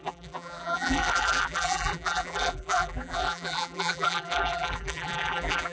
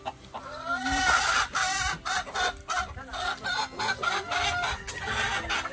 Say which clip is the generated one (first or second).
first